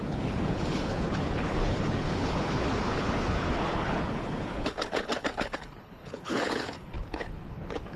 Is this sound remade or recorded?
remade